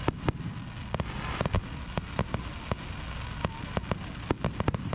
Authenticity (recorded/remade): recorded